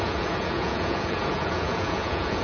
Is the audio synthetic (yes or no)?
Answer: yes